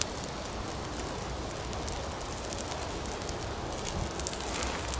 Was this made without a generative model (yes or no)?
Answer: yes